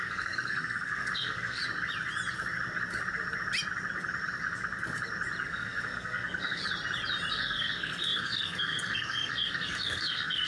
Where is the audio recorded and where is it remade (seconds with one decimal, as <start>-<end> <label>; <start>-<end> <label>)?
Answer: 0.0-1.6 remade; 1.6-5.4 recorded; 5.4-6.6 remade; 6.6-7.3 recorded; 7.3-10.5 remade